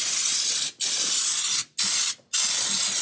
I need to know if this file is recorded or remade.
recorded